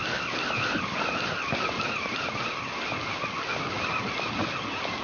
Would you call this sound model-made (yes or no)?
no